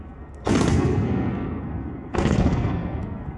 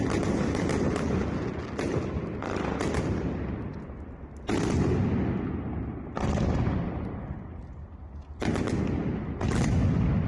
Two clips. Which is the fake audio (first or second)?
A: first